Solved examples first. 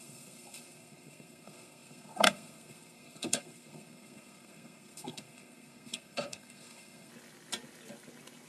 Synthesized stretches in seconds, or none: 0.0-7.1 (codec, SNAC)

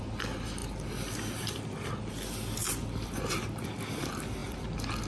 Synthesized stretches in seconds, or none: none

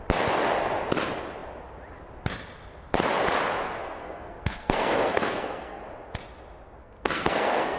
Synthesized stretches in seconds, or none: 3.8-5.8 (codec, SNAC); 6.8-7.8

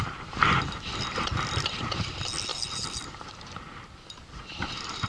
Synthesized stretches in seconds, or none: 1.3-1.8 (vocoder, BigVGAN v2); 2.5-3.8